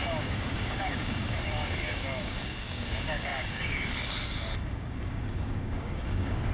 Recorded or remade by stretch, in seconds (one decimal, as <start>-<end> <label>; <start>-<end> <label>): 0.0-6.5 remade